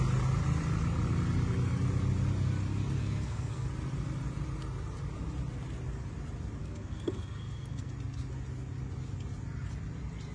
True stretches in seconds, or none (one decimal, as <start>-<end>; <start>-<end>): 0.0-3.0; 3.7-6.6; 7.9-10.3